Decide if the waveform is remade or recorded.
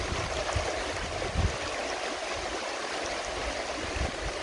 recorded